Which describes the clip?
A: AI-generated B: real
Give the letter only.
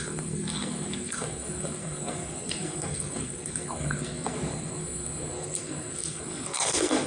A